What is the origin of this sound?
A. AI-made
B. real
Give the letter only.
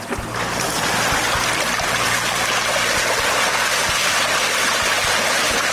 B